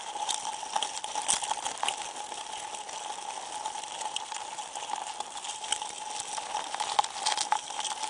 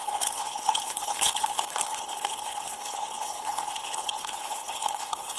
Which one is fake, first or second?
second